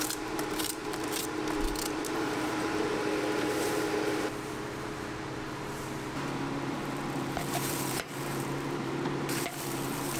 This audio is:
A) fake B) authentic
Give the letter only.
A